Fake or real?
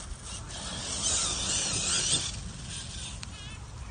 real